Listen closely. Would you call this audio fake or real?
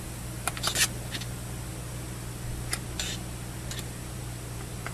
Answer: real